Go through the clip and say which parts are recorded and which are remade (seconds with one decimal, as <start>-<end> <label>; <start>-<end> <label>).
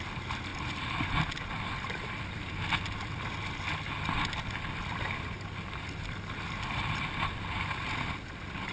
0.0-8.7 recorded